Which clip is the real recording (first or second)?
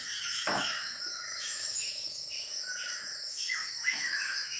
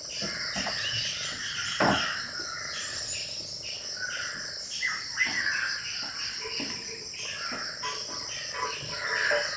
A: second